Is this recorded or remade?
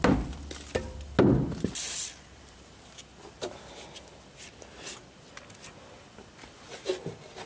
recorded